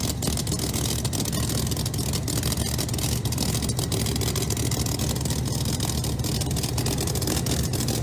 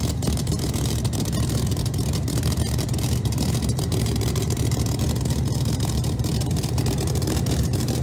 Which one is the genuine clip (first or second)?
first